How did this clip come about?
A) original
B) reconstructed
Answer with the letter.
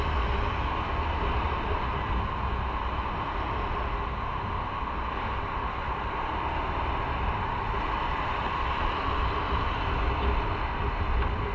A